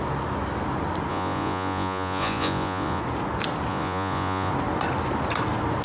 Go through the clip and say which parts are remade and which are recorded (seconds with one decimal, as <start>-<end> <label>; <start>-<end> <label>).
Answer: 0.0-1.1 recorded; 1.1-3.0 remade; 3.0-3.7 recorded; 3.7-4.5 remade; 4.5-5.8 recorded